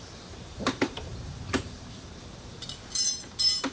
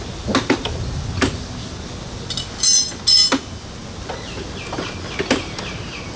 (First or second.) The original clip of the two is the second